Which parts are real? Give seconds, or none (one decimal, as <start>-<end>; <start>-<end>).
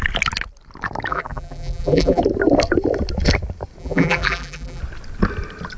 0.0-1.1; 2.2-3.8; 4.8-5.8